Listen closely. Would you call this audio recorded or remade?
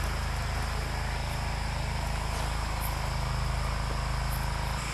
recorded